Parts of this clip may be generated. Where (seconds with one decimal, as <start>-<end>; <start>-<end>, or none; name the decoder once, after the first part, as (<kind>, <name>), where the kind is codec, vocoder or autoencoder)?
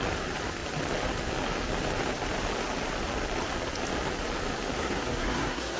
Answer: 4.8-5.8 (codec, SNAC)